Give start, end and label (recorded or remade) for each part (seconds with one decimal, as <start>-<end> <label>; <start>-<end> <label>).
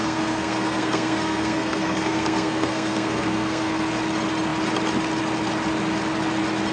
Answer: 0.0-3.9 remade; 3.9-6.7 recorded